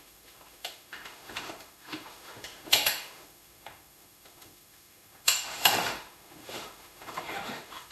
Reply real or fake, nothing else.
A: fake